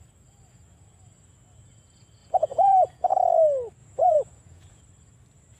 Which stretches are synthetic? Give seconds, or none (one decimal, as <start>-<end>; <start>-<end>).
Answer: 2.2-3.1; 3.8-4.8